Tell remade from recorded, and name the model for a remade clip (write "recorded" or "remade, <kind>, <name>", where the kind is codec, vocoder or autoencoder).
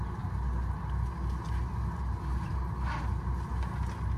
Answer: recorded